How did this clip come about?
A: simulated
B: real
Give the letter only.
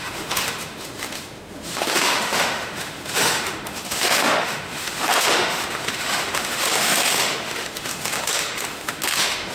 A